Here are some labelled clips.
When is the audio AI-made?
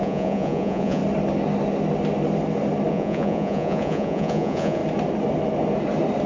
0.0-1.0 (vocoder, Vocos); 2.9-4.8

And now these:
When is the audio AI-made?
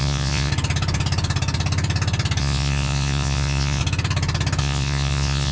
0.0-0.5 (vocoder, Vocos); 2.4-3.8; 4.6-5.5